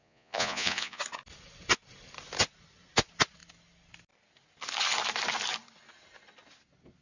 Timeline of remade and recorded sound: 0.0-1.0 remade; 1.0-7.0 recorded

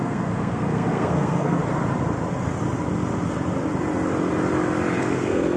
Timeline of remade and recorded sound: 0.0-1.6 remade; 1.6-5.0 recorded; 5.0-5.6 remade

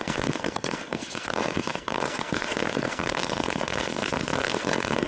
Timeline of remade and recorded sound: 0.0-5.1 remade

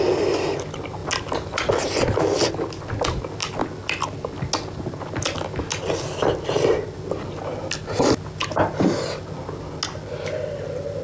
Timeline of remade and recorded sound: 0.0-11.0 recorded

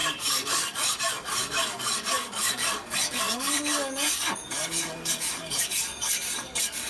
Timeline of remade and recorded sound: 0.0-6.9 remade

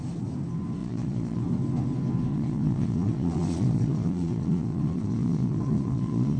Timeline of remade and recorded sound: 0.0-0.8 recorded; 0.8-1.4 remade; 1.4-2.3 recorded; 2.3-6.4 remade

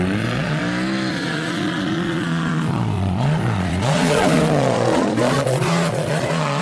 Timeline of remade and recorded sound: 0.0-0.6 remade; 0.6-1.1 recorded; 1.1-6.6 remade

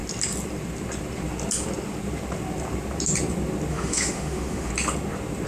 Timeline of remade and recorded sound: 0.0-3.7 recorded; 3.7-4.7 remade; 4.7-5.5 recorded